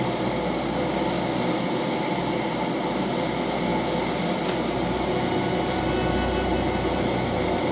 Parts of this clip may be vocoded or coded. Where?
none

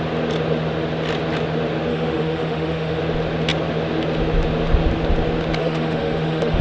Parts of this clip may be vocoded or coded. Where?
1.9-3.0; 5.6-6.6